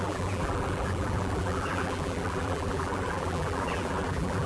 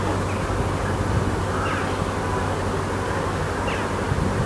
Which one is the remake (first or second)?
first